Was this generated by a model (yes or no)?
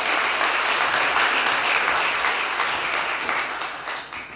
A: no